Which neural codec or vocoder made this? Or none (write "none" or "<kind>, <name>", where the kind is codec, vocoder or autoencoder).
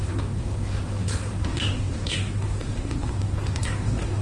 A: codec, SNAC